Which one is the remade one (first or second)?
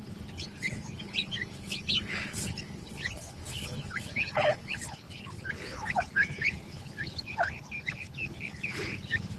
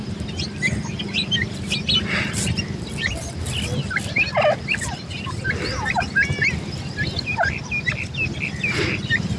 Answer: first